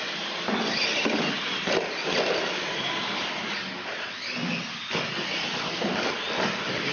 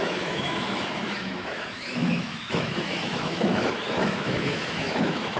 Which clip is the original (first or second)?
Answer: first